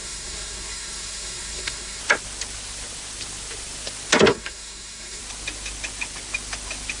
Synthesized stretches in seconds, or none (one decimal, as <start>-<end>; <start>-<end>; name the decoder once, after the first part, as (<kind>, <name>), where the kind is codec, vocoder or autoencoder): 0.0-2.0 (codec, SNAC); 4.3-5.2